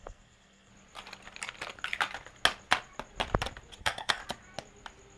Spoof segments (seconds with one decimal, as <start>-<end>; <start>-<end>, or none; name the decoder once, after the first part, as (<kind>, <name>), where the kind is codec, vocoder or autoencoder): 0.0-0.7 (codec, SNAC); 3.8-4.2